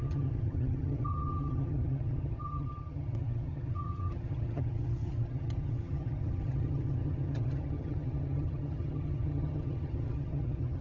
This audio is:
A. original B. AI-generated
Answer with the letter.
B